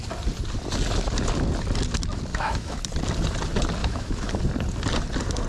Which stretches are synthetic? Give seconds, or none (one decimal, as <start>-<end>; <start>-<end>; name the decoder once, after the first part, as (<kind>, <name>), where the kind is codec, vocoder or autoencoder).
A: 2.3-2.8 (autoencoder, DAC-VAE); 3.8-4.4